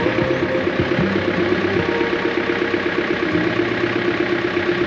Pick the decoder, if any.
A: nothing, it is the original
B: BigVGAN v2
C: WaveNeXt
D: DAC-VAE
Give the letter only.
A